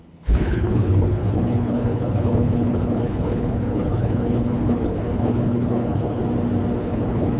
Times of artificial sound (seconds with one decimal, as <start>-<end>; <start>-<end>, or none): 0.0-6.2; 6.8-7.4